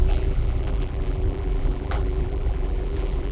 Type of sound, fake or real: fake